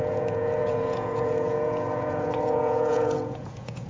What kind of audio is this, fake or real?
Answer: fake